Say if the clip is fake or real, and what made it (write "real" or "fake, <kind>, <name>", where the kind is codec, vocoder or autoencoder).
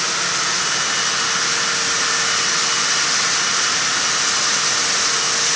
real